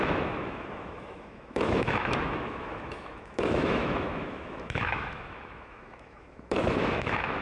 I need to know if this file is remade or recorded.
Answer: remade